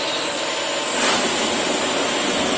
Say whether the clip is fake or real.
real